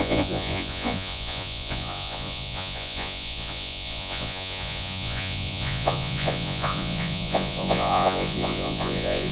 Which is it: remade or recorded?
remade